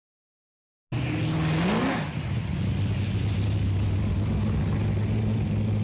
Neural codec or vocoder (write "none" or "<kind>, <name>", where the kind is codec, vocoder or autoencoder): none